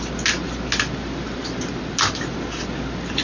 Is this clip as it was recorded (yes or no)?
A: yes